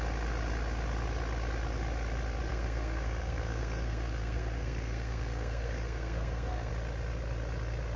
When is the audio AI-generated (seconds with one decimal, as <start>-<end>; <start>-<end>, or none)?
2.5-6.7

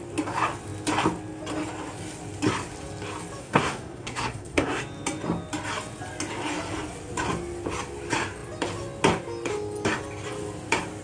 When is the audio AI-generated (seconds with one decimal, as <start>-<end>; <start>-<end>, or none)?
3.4-4.8

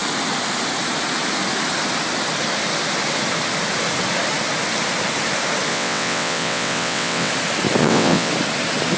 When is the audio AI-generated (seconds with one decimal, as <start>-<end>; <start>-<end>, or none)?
5.7-7.3; 7.8-8.3

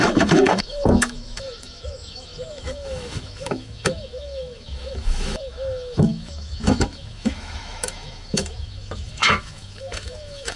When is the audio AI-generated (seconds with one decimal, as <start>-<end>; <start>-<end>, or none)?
0.0-10.6

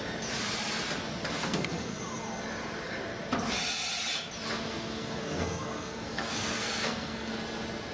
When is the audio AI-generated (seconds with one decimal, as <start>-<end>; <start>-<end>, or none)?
1.4-2.0; 4.7-7.3

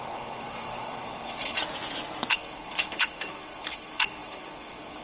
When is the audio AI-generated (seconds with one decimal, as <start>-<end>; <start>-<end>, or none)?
0.0-1.6; 2.3-5.0

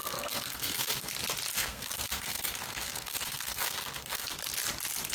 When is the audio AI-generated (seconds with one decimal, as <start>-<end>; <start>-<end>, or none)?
0.0-1.1; 1.5-4.3

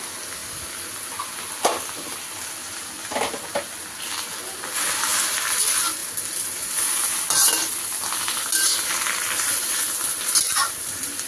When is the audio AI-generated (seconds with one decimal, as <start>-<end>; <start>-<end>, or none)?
none